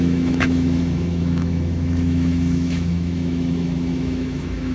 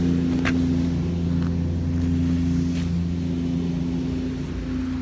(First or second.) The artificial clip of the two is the first